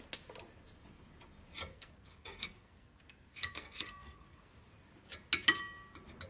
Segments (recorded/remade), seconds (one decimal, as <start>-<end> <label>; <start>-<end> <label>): 0.0-1.7 recorded; 1.7-4.5 remade; 4.5-6.3 recorded

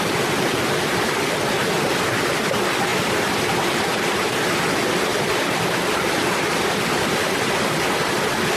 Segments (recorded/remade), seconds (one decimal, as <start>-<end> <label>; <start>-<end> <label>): 0.0-2.9 recorded; 2.9-4.0 remade; 4.0-5.1 recorded; 5.1-6.9 remade; 6.9-8.6 recorded

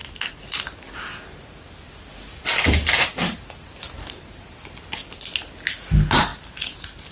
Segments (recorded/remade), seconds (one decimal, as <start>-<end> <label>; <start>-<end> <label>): 0.0-7.1 recorded

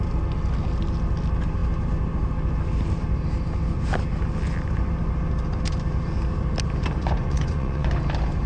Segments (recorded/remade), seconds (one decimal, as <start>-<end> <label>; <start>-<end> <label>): 0.0-7.0 recorded; 7.0-7.9 remade; 7.9-8.5 recorded